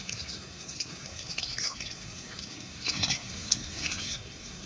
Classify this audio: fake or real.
fake